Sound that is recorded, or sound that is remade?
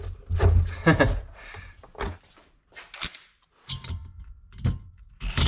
recorded